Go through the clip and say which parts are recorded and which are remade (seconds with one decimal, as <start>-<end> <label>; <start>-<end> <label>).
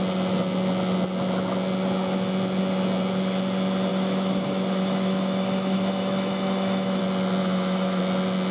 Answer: 0.0-3.9 recorded; 3.9-7.0 remade; 7.0-7.4 recorded; 7.4-8.0 remade; 8.0-8.5 recorded